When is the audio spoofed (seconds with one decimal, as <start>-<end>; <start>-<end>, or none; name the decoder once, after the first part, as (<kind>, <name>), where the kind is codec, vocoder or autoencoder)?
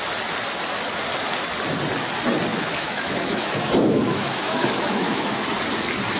2.5-5.4 (autoencoder, DAC-VAE)